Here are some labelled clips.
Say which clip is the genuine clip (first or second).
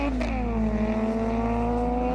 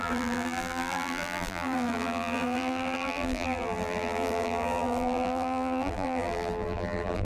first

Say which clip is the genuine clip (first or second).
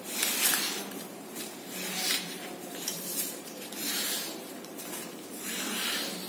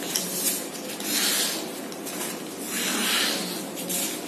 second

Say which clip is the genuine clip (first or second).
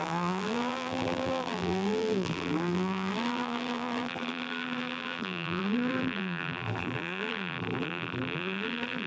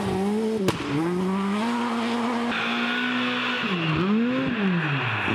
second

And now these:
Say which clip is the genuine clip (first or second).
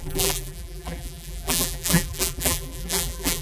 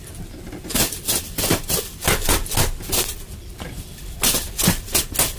second